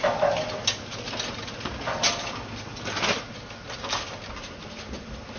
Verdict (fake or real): real